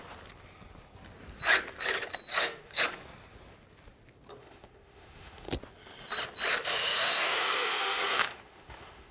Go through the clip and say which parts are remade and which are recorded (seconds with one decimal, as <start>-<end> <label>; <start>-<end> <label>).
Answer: 0.0-2.3 recorded; 2.3-2.8 remade; 2.8-4.4 recorded; 4.4-5.5 remade; 5.5-6.5 recorded; 6.5-9.1 remade